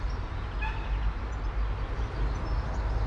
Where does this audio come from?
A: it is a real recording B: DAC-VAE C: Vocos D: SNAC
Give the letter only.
A